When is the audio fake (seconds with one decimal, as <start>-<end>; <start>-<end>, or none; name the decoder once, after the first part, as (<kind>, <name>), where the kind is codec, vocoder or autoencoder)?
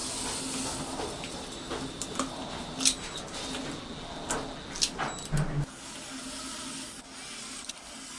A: none